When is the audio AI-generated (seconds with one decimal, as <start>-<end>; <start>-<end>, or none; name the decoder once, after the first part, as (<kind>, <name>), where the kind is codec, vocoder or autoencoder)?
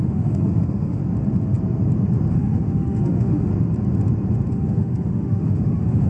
0.0-1.0 (autoencoder, DAC-VAE); 2.3-3.5; 4.5-6.1